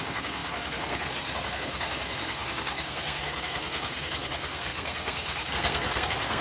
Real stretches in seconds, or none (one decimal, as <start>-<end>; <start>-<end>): none